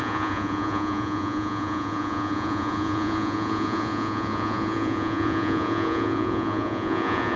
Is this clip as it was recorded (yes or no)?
no